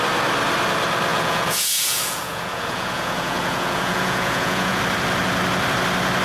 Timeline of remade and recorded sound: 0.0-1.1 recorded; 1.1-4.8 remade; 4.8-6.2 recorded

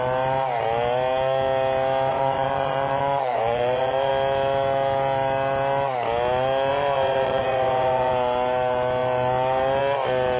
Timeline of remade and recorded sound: 0.0-2.1 recorded; 2.1-4.1 remade; 4.1-6.7 recorded; 6.7-8.1 remade; 8.1-10.4 recorded

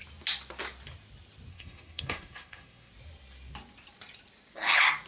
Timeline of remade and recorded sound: 0.0-1.5 recorded; 1.5-2.9 remade; 2.9-5.1 recorded

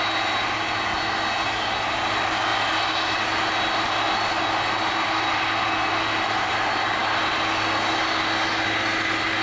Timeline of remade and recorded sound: 0.0-9.4 recorded